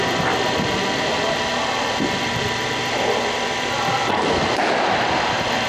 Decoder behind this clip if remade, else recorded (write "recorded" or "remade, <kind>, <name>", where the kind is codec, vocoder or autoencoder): remade, vocoder, BigVGAN v2